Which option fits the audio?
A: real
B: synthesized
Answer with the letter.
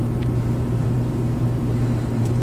B